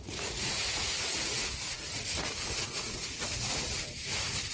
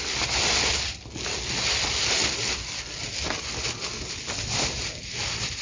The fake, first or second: first